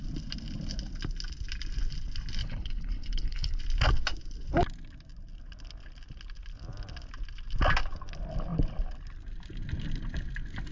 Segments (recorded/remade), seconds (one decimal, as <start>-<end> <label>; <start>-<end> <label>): 0.0-2.4 recorded; 2.4-3.6 remade; 3.6-10.7 recorded